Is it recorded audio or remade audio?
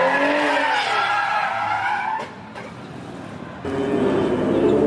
recorded